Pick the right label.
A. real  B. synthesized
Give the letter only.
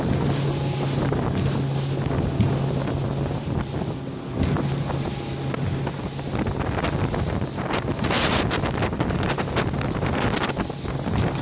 A